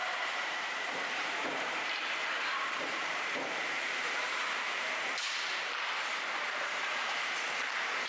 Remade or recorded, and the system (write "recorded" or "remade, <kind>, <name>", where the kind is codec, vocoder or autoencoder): remade, vocoder, BigVGAN v2